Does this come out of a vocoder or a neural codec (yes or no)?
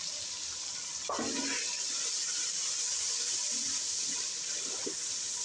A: no